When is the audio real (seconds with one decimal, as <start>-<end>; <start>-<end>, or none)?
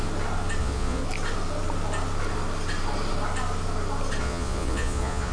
0.0-0.6; 1.0-4.2